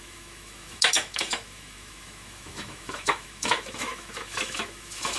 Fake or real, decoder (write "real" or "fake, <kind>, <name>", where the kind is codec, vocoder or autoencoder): fake, autoencoder, DAC-VAE